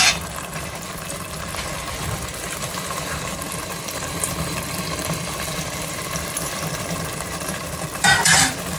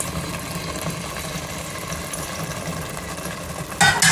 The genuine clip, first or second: second